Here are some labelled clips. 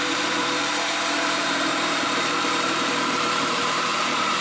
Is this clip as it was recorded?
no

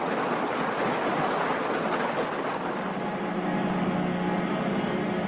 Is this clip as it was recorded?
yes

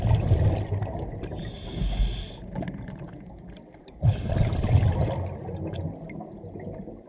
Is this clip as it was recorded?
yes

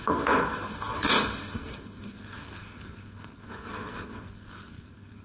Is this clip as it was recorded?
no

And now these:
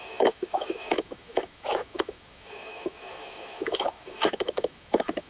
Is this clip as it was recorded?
no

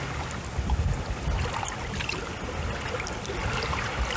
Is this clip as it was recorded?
yes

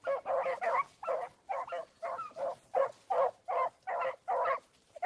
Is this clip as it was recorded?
yes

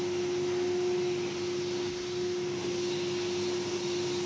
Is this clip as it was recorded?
yes